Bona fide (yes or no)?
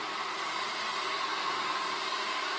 no